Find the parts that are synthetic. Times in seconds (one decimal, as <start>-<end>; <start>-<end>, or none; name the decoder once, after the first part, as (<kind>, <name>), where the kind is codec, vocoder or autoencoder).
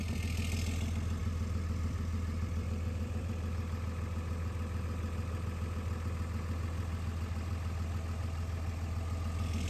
1.2-3.3 (vocoder, BigVGAN v2)